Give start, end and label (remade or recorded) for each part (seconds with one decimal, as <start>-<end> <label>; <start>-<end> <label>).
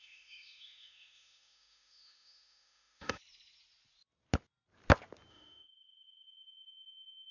0.0-3.2 remade; 3.2-5.3 recorded; 5.3-7.3 remade